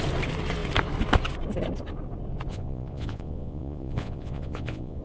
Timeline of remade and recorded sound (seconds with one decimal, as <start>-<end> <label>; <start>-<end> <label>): 0.0-2.5 recorded; 2.5-5.0 remade